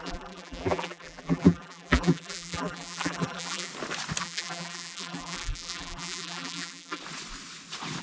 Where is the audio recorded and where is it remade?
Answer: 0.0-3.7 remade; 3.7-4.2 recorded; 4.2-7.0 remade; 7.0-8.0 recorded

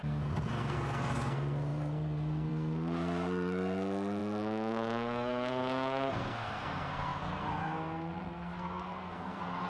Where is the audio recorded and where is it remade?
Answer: 0.0-9.7 remade

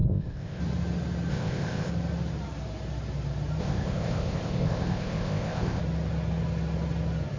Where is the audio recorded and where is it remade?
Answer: 0.0-0.6 remade; 0.6-1.3 recorded; 1.3-1.9 remade; 1.9-3.6 recorded; 3.6-5.8 remade; 5.8-7.4 recorded

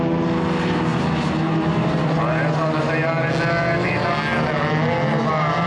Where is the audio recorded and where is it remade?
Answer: 0.0-5.7 recorded

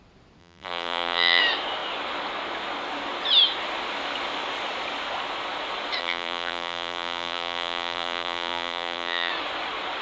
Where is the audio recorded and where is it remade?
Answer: 0.0-0.4 recorded; 0.4-1.4 remade; 1.4-6.0 recorded; 6.0-9.3 remade; 9.3-10.0 recorded

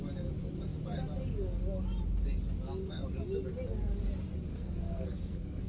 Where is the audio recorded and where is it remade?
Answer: 0.0-4.5 recorded; 4.5-5.7 remade

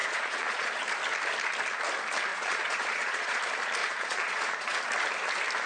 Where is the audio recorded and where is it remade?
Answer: 0.0-0.8 remade; 0.8-2.3 recorded; 2.3-3.4 remade; 3.4-3.8 recorded; 3.8-4.8 remade; 4.8-5.7 recorded